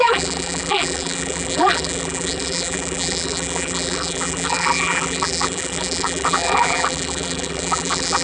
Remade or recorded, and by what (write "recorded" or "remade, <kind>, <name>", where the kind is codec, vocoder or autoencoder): remade, vocoder, BigVGAN v2